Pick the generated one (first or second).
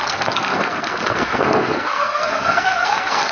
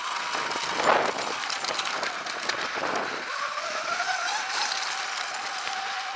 first